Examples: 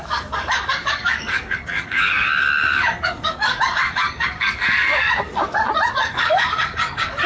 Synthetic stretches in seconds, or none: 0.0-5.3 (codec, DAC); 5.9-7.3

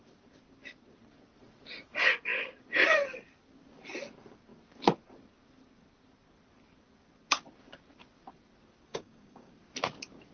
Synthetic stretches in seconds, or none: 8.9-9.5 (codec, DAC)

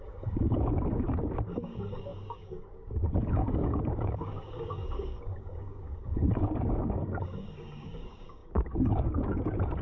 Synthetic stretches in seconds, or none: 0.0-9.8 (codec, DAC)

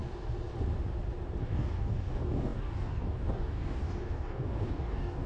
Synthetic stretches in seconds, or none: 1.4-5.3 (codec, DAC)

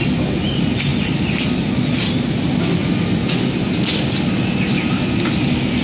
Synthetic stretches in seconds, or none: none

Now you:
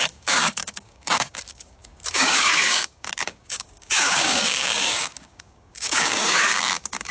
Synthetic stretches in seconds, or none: 0.0-7.1 (codec, DAC)